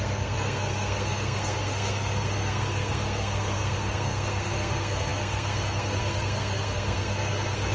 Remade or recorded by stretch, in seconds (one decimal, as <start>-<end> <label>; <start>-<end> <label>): 0.0-7.7 remade